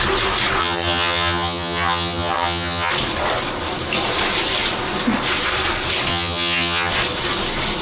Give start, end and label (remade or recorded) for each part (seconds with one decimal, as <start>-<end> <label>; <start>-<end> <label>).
0.0-0.6 recorded; 0.6-2.9 remade; 2.9-6.1 recorded; 6.1-6.9 remade; 6.9-7.8 recorded